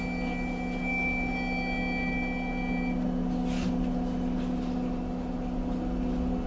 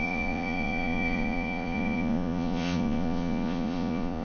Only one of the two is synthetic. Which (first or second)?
second